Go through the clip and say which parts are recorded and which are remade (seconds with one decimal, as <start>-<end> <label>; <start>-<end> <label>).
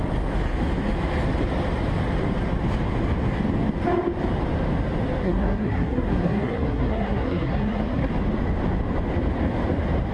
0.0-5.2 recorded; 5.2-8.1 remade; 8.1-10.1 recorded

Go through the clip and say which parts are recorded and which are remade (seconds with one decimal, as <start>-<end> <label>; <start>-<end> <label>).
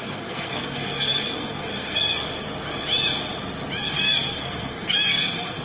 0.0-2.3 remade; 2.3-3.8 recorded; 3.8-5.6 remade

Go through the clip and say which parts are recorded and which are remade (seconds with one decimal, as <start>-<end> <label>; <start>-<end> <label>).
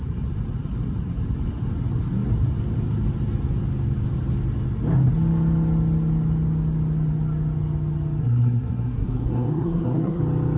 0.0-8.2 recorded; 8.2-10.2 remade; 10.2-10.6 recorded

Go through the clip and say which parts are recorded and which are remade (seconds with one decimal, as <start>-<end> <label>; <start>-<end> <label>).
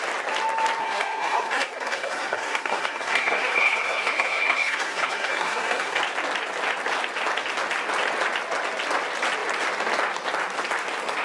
0.0-0.8 recorded; 0.8-6.0 remade; 6.0-11.2 recorded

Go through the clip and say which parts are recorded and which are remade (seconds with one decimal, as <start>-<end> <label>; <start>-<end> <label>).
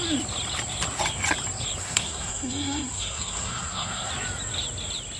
0.0-1.8 recorded; 1.8-4.1 remade; 4.1-5.2 recorded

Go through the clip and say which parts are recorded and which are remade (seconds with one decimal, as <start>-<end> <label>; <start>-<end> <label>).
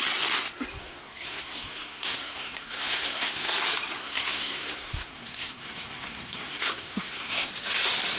0.0-0.8 recorded; 0.8-3.6 remade; 3.6-4.0 recorded; 4.0-7.5 remade; 7.5-8.2 recorded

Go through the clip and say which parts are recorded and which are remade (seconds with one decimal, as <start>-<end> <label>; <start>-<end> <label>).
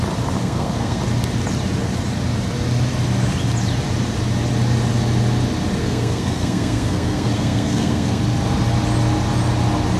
0.0-0.4 recorded; 0.4-1.0 remade; 1.0-5.8 recorded; 5.8-8.2 remade; 8.2-10.0 recorded